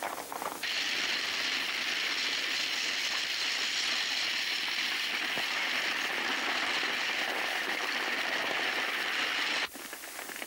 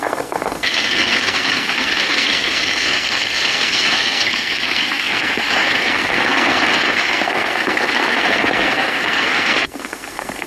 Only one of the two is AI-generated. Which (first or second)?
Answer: second